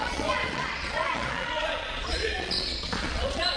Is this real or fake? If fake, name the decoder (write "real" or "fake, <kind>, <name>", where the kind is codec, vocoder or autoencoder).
fake, vocoder, Vocos